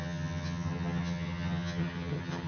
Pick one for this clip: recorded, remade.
remade